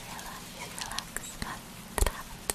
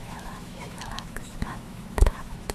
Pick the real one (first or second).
first